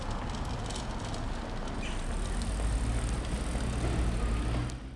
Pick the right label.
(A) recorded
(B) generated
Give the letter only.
A